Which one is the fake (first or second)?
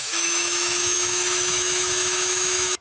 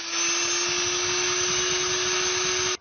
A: first